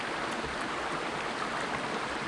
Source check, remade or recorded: remade